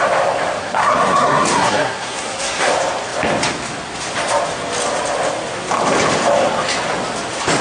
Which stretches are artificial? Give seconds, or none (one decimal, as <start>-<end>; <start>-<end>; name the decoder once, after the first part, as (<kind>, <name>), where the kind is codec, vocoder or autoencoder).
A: 0.6-2.7 (codec, SNAC)